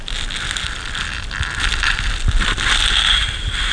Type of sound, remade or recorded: recorded